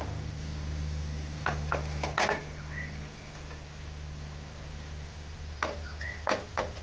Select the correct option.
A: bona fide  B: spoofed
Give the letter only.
A